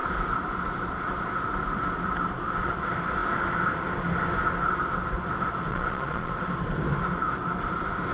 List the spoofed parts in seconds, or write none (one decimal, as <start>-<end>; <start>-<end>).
5.7-6.3